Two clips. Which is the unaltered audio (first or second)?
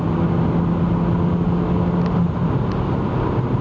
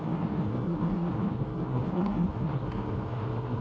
first